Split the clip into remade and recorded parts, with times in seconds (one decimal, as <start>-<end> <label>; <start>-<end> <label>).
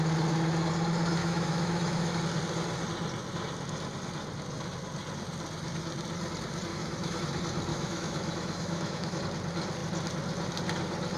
0.0-1.2 recorded; 1.2-2.2 remade; 2.2-6.7 recorded; 6.7-7.2 remade; 7.2-7.7 recorded; 7.7-9.2 remade; 9.2-11.2 recorded